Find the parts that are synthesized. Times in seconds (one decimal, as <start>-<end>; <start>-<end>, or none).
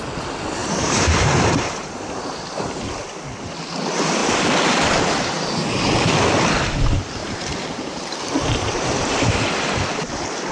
0.6-2.4; 7.2-9.3